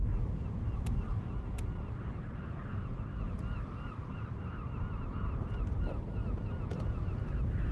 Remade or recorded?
recorded